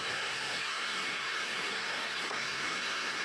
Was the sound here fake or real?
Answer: fake